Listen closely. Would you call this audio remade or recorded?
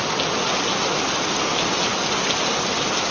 recorded